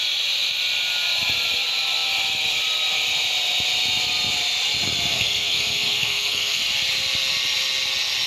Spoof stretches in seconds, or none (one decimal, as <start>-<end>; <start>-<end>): 5.1-6.6